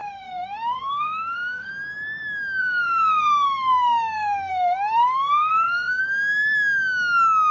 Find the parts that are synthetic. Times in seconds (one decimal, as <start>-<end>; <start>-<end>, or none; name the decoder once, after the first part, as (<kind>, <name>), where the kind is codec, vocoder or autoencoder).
0.0-1.7 (codec, SNAC); 2.6-6.0